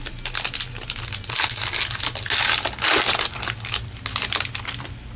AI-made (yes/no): no